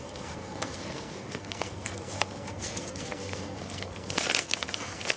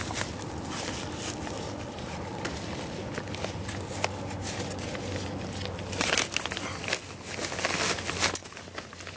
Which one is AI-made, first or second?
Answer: first